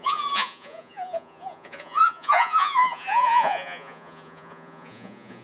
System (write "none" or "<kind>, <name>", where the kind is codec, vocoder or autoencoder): vocoder, Vocos